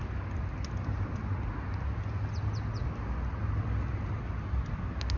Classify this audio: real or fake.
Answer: real